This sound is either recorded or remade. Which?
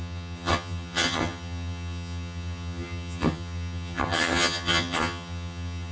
remade